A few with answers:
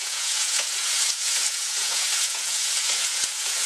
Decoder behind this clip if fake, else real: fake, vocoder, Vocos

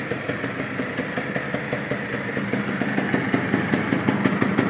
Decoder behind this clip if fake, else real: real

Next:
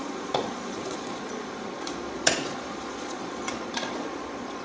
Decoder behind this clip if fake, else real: fake, vocoder, Vocos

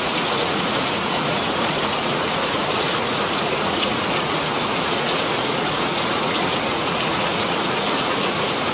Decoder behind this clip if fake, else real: fake, vocoder, Vocos